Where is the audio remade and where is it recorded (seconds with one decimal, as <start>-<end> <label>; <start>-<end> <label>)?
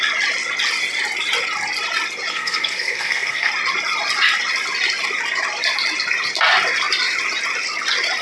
0.0-2.3 recorded; 2.3-3.5 remade; 3.5-8.2 recorded